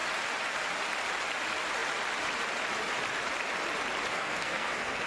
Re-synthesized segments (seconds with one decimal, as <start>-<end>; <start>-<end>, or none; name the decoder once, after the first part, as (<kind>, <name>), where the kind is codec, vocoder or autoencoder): 4.1-5.1 (codec, SNAC)